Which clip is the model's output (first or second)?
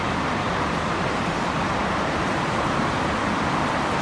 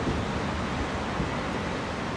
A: first